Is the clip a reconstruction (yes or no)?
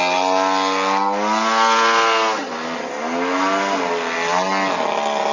no